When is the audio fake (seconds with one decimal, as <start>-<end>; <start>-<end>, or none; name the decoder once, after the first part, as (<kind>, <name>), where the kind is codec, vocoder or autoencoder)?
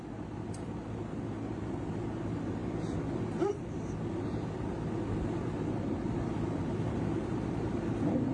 none